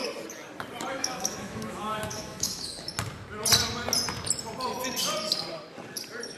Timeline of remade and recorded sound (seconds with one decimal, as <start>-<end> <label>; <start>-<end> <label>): 0.0-0.9 recorded; 0.9-2.9 remade; 2.9-6.4 recorded